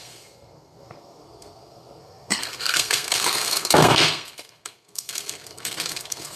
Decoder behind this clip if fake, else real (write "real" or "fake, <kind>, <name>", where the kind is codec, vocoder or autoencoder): fake, codec, SNAC